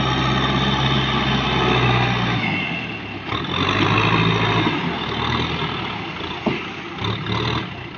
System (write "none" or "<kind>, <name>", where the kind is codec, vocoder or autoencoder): none